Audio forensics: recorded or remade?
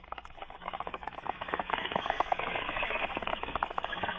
remade